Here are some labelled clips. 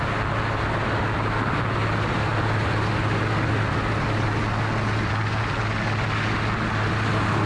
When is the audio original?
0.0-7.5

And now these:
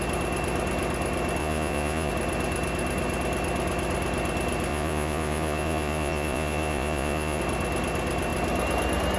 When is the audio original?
0.0-1.4; 2.1-4.7; 7.4-9.2

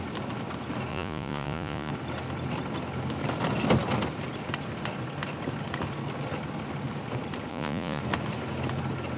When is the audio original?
0.0-0.9; 1.9-7.5; 8.0-9.2